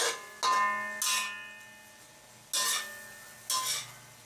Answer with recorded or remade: recorded